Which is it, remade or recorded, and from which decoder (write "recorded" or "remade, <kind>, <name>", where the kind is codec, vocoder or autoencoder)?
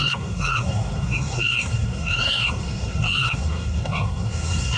remade, codec, SNAC